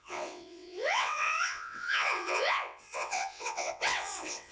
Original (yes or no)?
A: no